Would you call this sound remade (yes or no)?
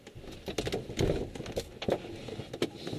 no